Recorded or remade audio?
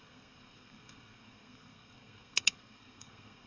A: remade